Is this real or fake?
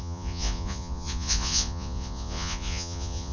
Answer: fake